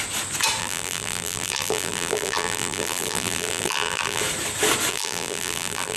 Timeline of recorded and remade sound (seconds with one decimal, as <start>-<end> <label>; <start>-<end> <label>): 0.0-0.6 recorded; 0.6-4.2 remade; 4.2-4.9 recorded; 4.9-6.0 remade

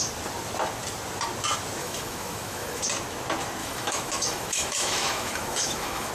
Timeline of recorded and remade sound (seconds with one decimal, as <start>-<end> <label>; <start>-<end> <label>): 0.0-1.8 recorded; 1.8-2.8 remade; 2.8-3.6 recorded; 3.6-6.1 remade

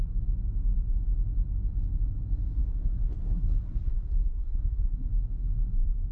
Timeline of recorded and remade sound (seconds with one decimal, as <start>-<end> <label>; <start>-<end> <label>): 0.0-2.6 recorded; 2.6-5.1 remade; 5.1-6.1 recorded

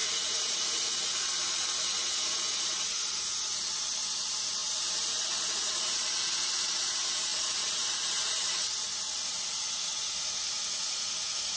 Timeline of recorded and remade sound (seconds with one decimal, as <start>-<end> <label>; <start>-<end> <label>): 0.0-11.6 remade

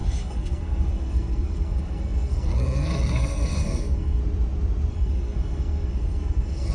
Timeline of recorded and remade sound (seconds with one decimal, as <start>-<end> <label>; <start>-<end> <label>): 0.0-4.2 remade; 4.2-4.9 recorded; 4.9-6.7 remade

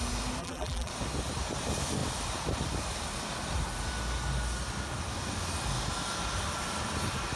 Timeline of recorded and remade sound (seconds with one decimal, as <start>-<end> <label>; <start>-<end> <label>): 0.0-0.4 recorded; 0.4-0.9 remade; 0.9-7.4 recorded

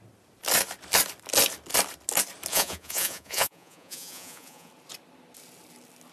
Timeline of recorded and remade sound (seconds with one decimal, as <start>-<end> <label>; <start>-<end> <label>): 0.0-2.5 recorded; 2.5-4.7 remade; 4.7-6.1 recorded

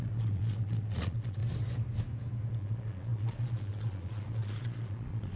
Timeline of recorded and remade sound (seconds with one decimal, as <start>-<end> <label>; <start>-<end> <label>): 0.0-1.4 remade; 1.4-2.5 recorded; 2.5-5.4 remade